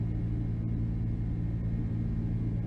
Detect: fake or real real